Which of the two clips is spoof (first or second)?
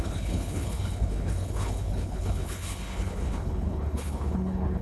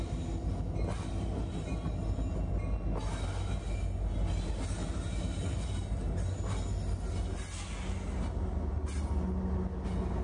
first